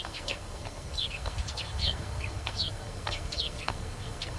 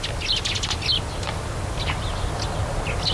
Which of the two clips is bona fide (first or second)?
second